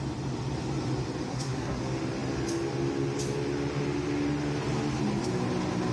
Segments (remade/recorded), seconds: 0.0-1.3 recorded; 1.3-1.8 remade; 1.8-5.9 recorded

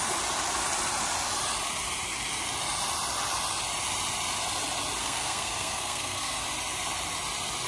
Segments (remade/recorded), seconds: 0.0-5.0 recorded; 5.0-6.4 remade; 6.4-7.7 recorded

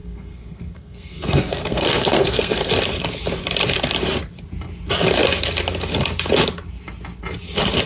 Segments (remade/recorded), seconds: 0.0-2.7 remade; 2.7-7.9 recorded

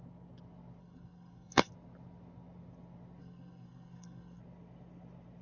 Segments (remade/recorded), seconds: 0.0-0.8 recorded; 0.8-1.7 remade; 1.7-3.2 recorded; 3.2-4.4 remade; 4.4-5.4 recorded